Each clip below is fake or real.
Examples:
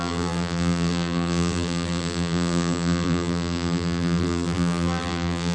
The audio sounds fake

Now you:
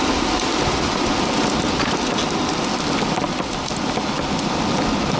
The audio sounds real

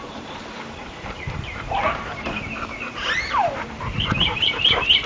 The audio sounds fake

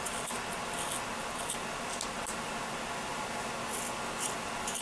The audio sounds real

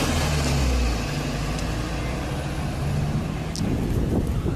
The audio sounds real